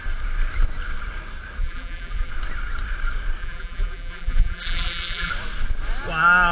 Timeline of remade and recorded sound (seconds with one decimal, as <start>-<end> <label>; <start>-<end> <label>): 0.0-1.6 recorded; 1.6-2.3 remade; 2.3-3.4 recorded; 3.4-5.3 remade; 5.3-6.5 recorded